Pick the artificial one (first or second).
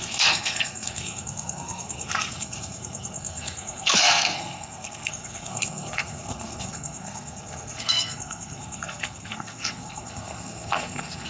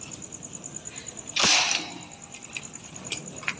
first